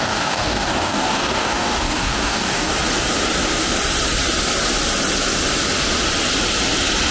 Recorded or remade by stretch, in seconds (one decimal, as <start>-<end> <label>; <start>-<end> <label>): 0.0-2.7 remade; 2.7-7.1 recorded